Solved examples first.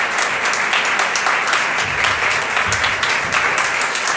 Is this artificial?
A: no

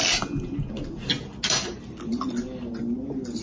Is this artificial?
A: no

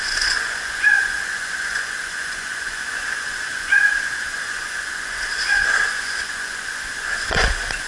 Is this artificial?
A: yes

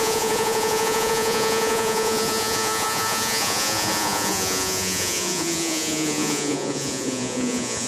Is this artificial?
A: yes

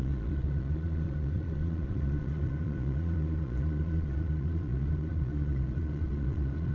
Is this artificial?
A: yes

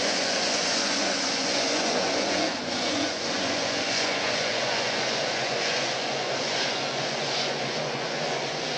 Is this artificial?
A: yes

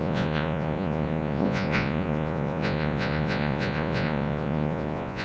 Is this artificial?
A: yes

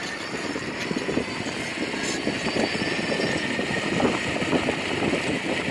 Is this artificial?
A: no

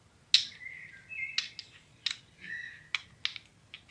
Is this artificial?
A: no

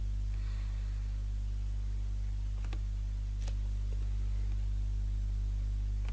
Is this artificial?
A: no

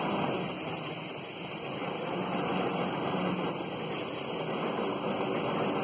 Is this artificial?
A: no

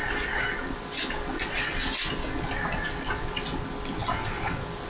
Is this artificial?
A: no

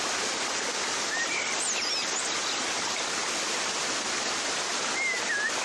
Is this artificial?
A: no